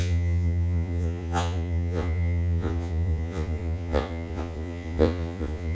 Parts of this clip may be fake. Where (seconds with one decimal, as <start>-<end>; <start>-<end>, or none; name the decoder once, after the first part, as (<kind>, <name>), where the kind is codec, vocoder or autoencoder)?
0.0-5.7 (vocoder, Vocos)